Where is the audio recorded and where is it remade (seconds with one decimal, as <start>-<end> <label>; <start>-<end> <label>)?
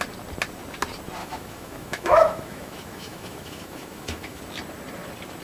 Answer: 0.0-1.2 recorded; 1.2-4.4 remade; 4.4-5.4 recorded